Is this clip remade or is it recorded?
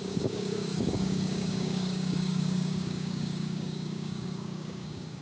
remade